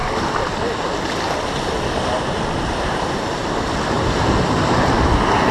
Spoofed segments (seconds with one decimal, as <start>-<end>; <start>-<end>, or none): none